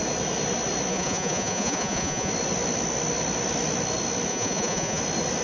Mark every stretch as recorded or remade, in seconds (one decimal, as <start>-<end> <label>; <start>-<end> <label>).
0.0-0.9 recorded; 0.9-2.3 remade; 2.3-4.3 recorded; 4.3-5.0 remade; 5.0-5.4 recorded